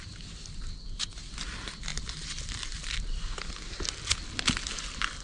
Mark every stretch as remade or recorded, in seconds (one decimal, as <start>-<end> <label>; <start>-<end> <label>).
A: 0.0-5.2 recorded